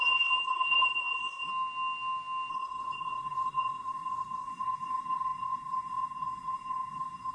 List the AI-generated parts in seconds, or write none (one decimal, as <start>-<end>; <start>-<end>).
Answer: 0.0-1.5; 2.5-7.3